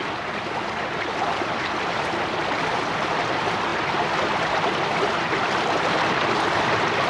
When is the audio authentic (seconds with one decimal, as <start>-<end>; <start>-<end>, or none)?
0.0-3.7